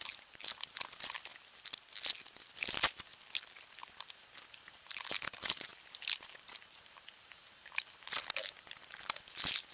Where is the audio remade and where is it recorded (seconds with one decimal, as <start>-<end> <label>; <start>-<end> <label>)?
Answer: 0.0-1.3 remade; 1.3-2.5 recorded; 2.5-3.1 remade; 3.1-4.1 recorded; 4.1-5.7 remade; 5.7-6.6 recorded; 6.6-9.7 remade